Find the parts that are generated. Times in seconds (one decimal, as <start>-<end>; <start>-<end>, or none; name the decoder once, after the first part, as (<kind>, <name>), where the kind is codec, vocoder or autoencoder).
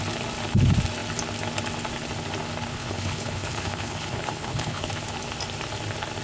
2.7-4.9 (codec, HILCodec)